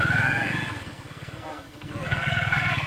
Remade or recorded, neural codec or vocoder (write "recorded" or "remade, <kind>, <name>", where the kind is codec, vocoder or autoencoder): remade, codec, SNAC